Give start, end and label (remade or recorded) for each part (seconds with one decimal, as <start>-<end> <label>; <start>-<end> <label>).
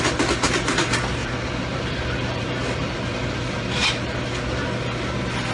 0.0-1.2 recorded; 1.2-3.9 remade; 3.9-5.5 recorded